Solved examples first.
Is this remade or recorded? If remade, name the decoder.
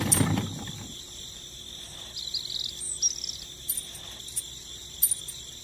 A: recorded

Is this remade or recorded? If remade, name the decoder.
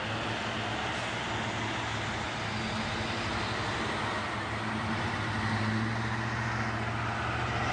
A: recorded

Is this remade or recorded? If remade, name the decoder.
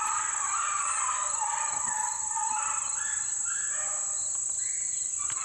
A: recorded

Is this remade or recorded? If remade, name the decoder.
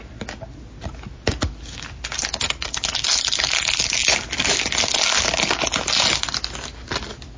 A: recorded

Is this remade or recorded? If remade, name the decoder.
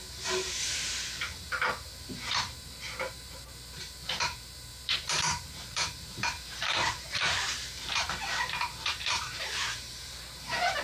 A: remade, vocoder, BigVGAN v2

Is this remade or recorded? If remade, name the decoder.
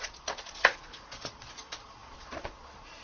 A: remade, vocoder, Vocos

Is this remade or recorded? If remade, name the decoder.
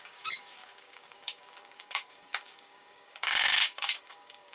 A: remade, codec, DAC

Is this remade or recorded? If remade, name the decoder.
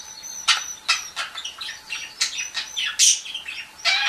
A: recorded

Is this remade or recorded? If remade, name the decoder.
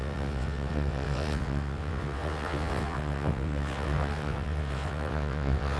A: remade, vocoder, WaveNeXt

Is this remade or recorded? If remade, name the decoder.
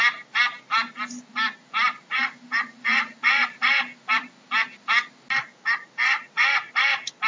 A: recorded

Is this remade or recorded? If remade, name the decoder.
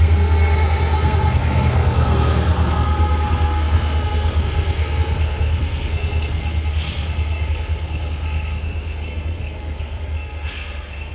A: remade, codec, SNAC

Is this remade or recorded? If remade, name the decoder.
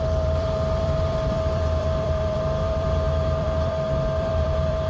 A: remade, vocoder, BigVGAN v2